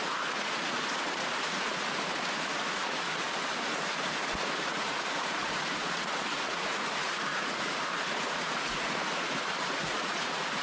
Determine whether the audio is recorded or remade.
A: remade